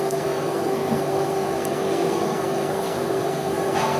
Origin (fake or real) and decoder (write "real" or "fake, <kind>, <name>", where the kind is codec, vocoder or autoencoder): fake, codec, SNAC